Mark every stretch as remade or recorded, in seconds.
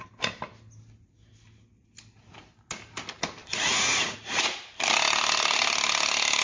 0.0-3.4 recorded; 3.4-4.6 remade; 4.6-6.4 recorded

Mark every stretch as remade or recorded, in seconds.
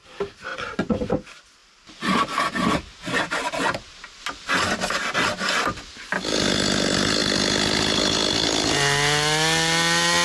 0.0-0.5 recorded; 0.5-1.1 remade; 1.1-10.2 recorded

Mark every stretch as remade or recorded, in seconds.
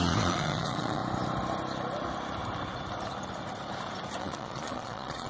0.0-1.0 remade; 1.0-4.2 recorded; 4.2-5.3 remade